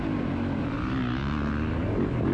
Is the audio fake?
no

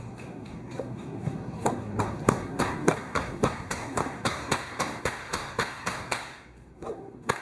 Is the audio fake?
yes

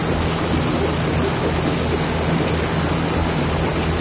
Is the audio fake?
no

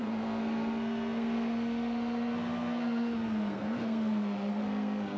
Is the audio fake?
yes